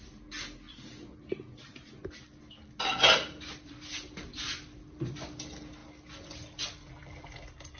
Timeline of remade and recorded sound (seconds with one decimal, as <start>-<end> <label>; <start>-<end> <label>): 0.0-7.8 recorded